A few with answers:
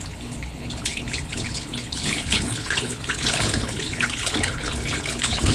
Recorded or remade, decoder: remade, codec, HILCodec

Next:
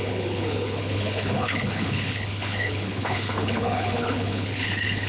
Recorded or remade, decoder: remade, codec, HILCodec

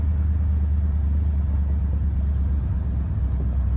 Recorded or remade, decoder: recorded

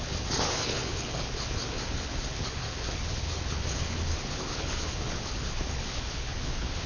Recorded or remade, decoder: remade, codec, HILCodec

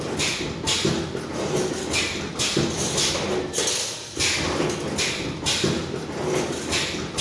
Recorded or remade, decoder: recorded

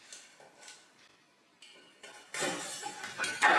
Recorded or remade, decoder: recorded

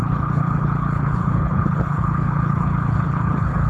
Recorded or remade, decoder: remade, codec, HILCodec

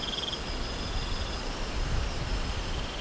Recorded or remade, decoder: recorded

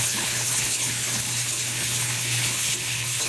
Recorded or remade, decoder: remade, codec, HILCodec